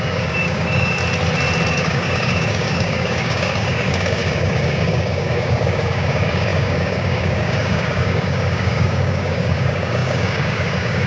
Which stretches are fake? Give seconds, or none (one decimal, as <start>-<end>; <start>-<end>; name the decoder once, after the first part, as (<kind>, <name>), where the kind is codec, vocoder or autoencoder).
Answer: 0.0-1.0 (codec, DAC); 1.7-11.1